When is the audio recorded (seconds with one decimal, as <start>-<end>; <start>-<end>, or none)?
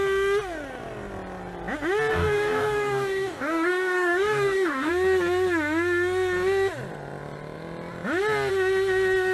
0.0-2.1; 4.9-9.3